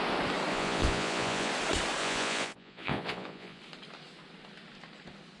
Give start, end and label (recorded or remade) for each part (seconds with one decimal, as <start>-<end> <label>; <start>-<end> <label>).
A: 0.0-0.5 recorded; 0.5-1.5 remade; 1.5-2.0 recorded; 2.0-3.6 remade; 3.6-5.4 recorded